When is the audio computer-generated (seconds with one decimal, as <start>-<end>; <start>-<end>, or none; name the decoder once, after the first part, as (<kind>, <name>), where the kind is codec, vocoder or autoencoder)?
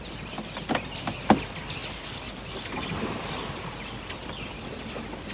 none